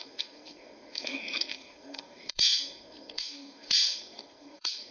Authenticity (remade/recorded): remade